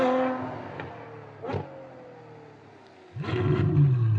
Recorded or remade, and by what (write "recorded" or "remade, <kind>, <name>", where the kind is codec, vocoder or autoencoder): recorded